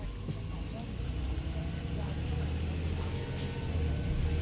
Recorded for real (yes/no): yes